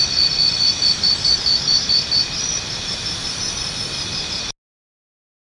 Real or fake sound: real